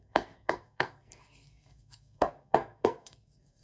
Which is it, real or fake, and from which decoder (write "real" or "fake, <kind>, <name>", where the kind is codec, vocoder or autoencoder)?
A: fake, codec, SNAC